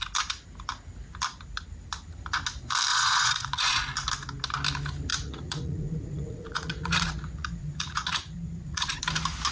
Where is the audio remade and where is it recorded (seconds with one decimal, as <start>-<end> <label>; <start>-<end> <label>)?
0.0-2.9 recorded; 2.9-3.8 remade; 3.8-5.1 recorded; 5.1-9.0 remade; 9.0-9.5 recorded